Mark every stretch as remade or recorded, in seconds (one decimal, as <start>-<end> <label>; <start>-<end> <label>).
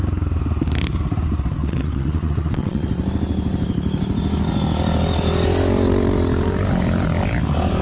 0.0-1.6 recorded; 1.6-2.9 remade; 2.9-7.8 recorded